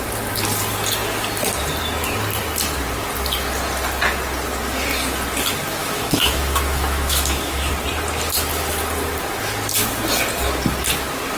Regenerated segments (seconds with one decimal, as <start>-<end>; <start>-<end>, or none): 5.8-7.7